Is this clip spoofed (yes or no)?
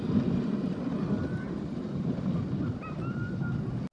no